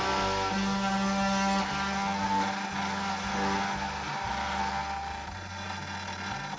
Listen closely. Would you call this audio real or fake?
real